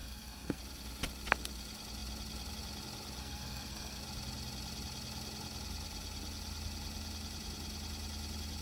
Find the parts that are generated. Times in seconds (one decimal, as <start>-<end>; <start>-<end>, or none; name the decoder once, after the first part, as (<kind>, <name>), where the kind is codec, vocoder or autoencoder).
0.0-0.6 (codec, SNAC); 3.2-4.0